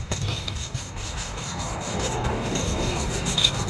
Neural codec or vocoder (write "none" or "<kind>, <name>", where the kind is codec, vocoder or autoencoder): codec, DAC